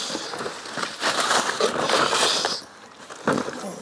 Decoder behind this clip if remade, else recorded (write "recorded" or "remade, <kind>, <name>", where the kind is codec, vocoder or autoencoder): recorded